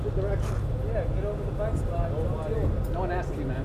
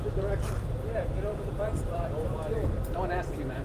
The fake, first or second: second